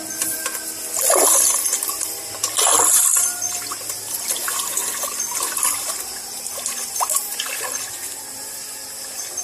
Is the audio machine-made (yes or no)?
no